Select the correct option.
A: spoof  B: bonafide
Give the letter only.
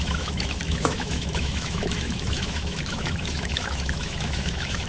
A